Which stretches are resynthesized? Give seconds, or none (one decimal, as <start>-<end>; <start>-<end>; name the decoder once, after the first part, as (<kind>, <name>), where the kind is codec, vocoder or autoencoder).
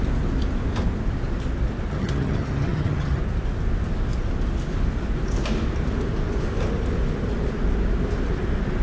1.9-3.2 (vocoder, HiFi-GAN)